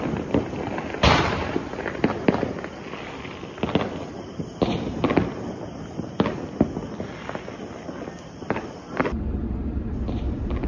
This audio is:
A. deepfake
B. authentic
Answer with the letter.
B